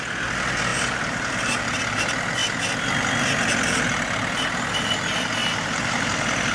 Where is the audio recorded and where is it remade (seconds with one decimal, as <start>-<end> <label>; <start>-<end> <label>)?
0.0-0.7 recorded; 0.7-1.8 remade; 1.8-5.4 recorded; 5.4-6.5 remade